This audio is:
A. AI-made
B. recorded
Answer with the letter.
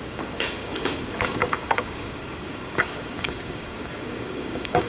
A